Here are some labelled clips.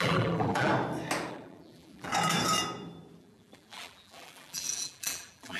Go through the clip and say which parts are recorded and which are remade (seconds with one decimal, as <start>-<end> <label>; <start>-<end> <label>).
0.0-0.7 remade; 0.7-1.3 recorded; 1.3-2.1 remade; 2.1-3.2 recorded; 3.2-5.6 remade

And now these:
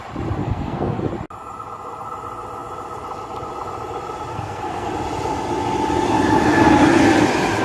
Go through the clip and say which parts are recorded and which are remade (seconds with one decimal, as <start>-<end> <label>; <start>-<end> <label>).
0.0-0.4 recorded; 0.4-1.1 remade; 1.1-4.3 recorded; 4.3-4.9 remade; 4.9-7.6 recorded

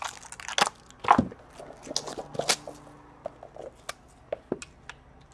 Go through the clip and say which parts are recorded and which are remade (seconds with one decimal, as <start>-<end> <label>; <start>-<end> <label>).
0.0-5.3 recorded